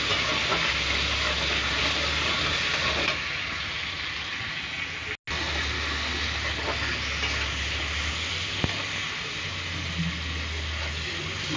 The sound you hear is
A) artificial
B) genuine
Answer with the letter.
B